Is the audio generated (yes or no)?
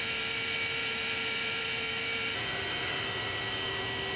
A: no